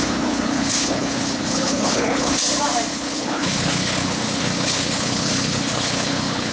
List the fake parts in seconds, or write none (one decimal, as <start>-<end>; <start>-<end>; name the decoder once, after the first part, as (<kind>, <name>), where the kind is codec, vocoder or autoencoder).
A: 0.0-2.4 (codec, HILCodec); 2.9-6.5